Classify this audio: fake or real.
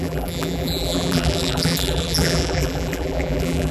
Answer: fake